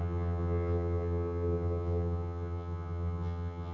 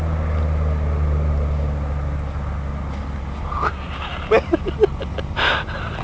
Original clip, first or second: second